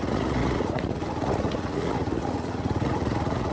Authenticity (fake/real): fake